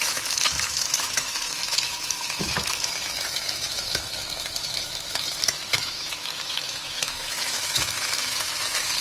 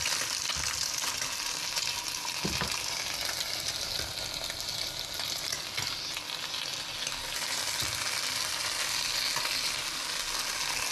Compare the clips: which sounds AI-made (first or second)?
first